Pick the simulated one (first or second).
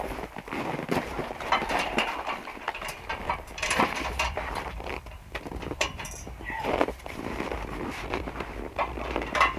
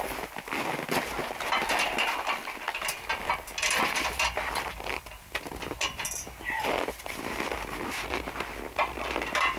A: first